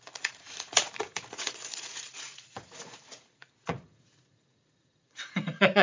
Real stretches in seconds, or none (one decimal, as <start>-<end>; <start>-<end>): none